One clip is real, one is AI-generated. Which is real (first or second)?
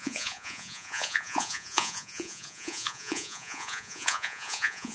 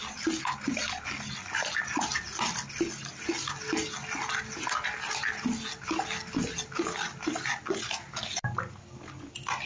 second